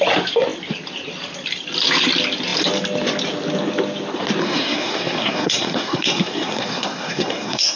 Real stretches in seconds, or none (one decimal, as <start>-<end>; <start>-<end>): 0.0-4.4